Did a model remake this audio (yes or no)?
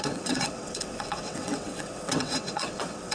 yes